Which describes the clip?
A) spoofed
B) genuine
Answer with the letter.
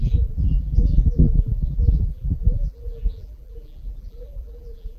A